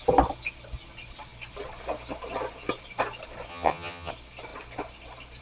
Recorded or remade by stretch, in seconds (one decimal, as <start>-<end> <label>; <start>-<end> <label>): 0.0-3.5 recorded; 3.5-4.1 remade; 4.1-5.4 recorded

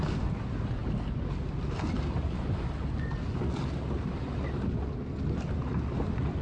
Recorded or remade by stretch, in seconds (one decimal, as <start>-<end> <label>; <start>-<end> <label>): 0.0-6.4 recorded

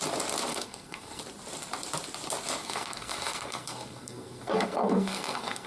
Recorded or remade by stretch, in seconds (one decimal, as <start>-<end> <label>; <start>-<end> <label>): 0.0-0.5 recorded; 0.5-1.2 remade; 1.2-2.6 recorded; 2.6-5.7 remade

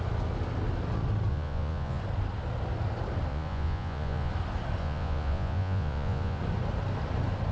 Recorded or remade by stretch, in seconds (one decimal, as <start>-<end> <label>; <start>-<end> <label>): 0.0-1.3 recorded; 1.3-2.0 remade; 2.0-3.3 recorded; 3.3-4.3 remade; 4.3-4.8 recorded; 4.8-6.4 remade; 6.4-7.5 recorded

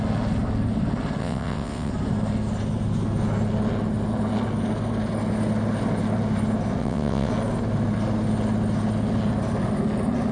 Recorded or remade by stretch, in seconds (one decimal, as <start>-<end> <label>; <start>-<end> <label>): 0.0-1.2 recorded; 1.2-1.9 remade; 1.9-6.8 recorded; 6.8-7.3 remade; 7.3-10.3 recorded

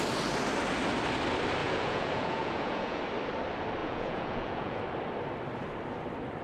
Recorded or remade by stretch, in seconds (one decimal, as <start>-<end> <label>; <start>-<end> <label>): 0.0-1.6 recorded; 1.6-3.0 remade; 3.0-3.8 recorded; 3.8-4.8 remade; 4.8-6.4 recorded

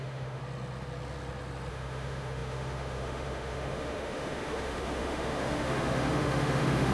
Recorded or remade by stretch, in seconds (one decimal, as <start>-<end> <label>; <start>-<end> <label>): 0.0-0.4 remade; 0.4-1.7 recorded; 1.7-6.9 remade